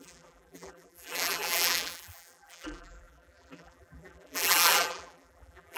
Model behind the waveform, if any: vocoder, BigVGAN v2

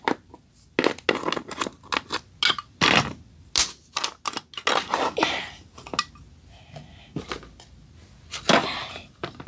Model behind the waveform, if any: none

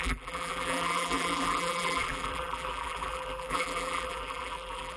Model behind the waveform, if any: vocoder, BigVGAN v2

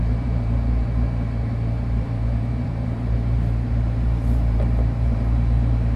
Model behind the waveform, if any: vocoder, BigVGAN v2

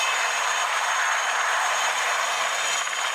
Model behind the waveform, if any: none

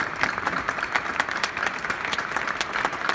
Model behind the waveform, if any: vocoder, BigVGAN v2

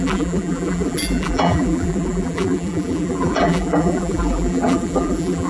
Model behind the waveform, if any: vocoder, BigVGAN v2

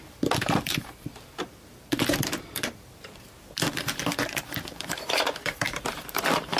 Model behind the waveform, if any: vocoder, BigVGAN v2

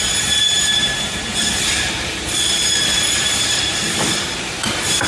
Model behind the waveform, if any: vocoder, BigVGAN v2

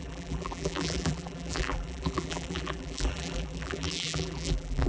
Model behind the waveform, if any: vocoder, BigVGAN v2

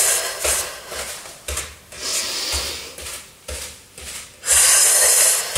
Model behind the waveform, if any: none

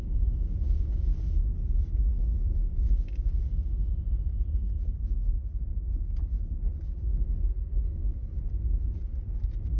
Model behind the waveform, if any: none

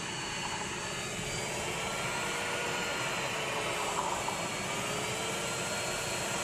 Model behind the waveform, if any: none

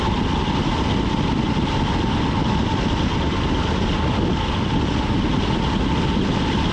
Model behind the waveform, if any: none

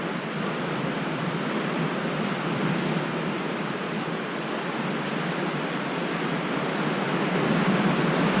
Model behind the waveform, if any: vocoder, BigVGAN v2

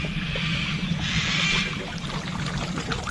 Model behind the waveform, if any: none